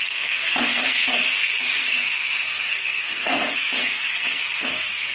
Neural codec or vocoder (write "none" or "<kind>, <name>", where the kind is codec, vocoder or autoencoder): codec, SNAC